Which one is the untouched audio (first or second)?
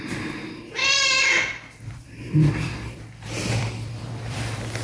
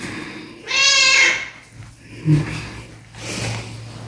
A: second